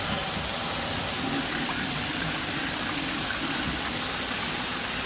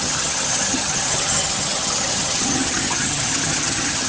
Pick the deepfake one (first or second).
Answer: second